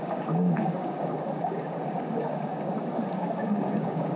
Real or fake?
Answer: fake